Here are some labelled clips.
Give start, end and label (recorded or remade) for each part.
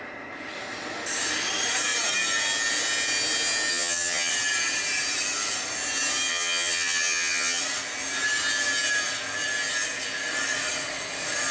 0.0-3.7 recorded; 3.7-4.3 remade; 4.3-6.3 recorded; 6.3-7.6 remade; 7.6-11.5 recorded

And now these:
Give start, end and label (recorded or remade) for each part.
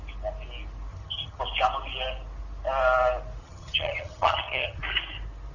0.0-0.9 recorded; 0.9-1.4 remade; 1.4-3.4 recorded; 3.4-4.8 remade; 4.8-5.5 recorded